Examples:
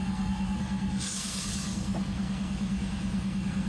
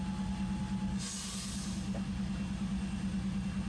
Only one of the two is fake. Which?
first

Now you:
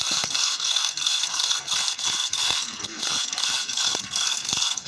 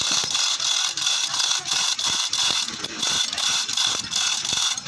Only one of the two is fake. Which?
first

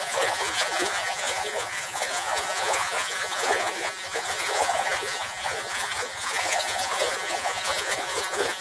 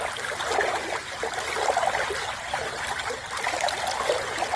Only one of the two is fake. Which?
first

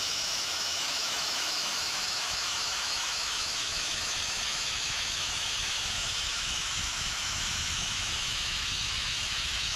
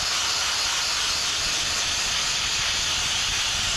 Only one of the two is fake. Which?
first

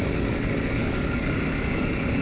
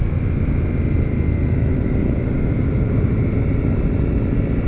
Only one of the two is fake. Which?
first